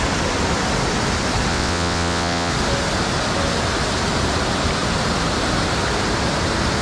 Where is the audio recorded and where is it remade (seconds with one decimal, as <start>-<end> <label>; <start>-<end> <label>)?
0.0-1.5 recorded; 1.5-2.5 remade; 2.5-6.8 recorded